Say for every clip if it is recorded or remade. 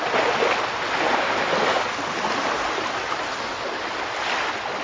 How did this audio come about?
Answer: recorded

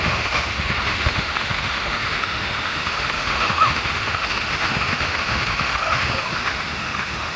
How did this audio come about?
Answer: remade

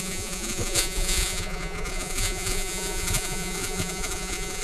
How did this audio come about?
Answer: remade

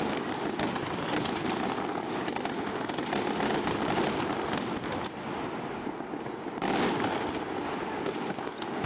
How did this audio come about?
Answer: recorded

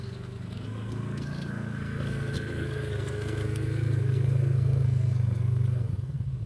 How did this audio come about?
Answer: remade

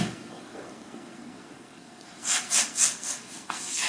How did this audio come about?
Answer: remade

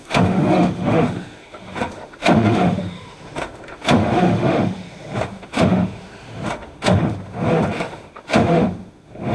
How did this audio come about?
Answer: remade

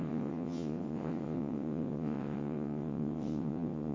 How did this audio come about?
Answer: remade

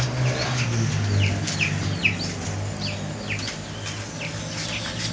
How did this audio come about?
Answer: recorded